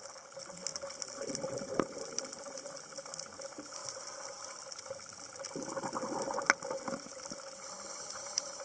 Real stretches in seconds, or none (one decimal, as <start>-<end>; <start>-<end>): 0.0-8.6